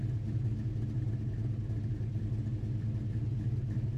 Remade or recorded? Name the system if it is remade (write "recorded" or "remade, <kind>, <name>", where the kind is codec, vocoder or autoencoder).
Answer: recorded